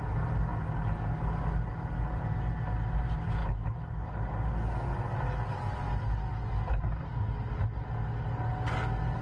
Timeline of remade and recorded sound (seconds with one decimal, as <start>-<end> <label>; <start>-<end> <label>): 0.0-9.2 recorded